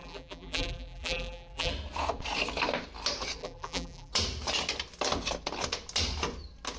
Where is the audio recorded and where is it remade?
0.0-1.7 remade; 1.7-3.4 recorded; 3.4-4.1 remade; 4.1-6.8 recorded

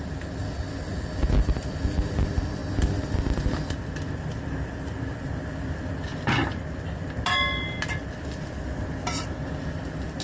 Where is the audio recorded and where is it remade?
0.0-10.2 recorded

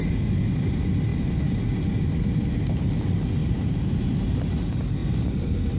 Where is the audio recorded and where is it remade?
0.0-3.4 recorded; 3.4-4.4 remade; 4.4-5.0 recorded; 5.0-5.8 remade

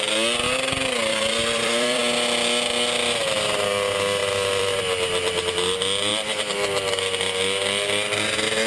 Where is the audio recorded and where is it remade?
0.0-1.1 recorded; 1.1-2.0 remade; 2.0-4.2 recorded; 4.2-4.8 remade; 4.8-6.1 recorded; 6.1-6.9 remade; 6.9-8.7 recorded

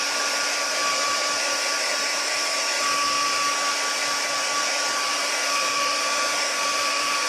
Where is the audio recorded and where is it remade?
0.0-0.8 remade; 0.8-5.1 recorded; 5.1-7.3 remade

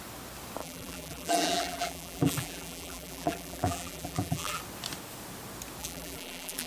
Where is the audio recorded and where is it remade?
0.0-0.6 recorded; 0.6-4.6 remade; 4.6-5.8 recorded; 5.8-6.7 remade